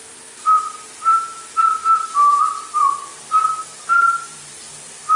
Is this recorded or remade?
remade